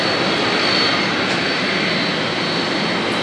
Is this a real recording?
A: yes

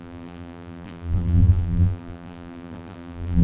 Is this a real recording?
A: no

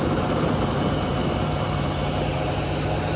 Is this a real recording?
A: no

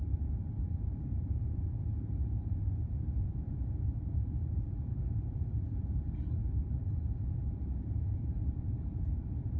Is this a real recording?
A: no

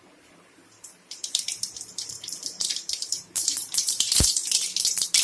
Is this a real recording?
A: no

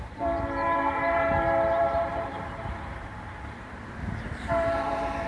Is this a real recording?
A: no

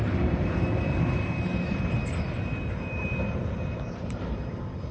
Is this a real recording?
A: no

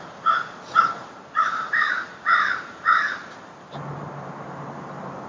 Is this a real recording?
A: no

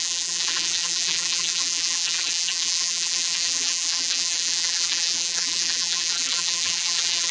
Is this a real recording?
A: no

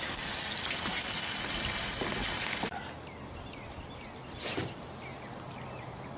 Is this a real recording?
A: yes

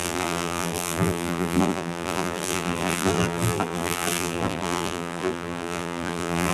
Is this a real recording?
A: no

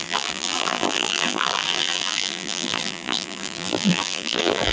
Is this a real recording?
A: no